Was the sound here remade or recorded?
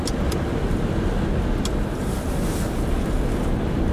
recorded